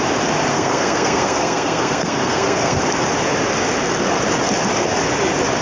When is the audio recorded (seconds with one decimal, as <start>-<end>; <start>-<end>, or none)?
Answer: 0.0-0.5; 2.8-5.6